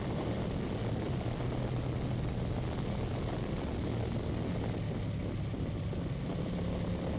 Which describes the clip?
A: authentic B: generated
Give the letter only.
A